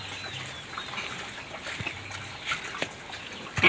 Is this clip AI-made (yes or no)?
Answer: no